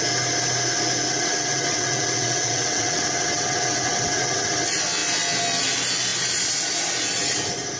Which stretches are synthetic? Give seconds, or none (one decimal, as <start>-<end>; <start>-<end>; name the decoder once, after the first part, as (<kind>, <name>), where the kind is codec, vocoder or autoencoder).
1.1-4.5 (vocoder, WaveNeXt)